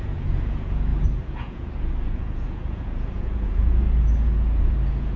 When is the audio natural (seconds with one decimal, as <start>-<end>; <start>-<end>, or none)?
none